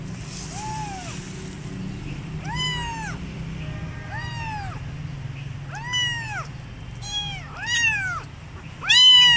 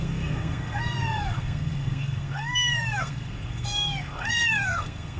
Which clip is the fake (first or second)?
second